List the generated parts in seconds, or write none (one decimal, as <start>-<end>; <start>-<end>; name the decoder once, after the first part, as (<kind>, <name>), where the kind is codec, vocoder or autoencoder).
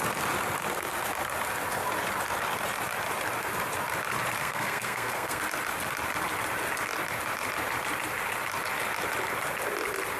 4.4-5.4 (codec, SNAC)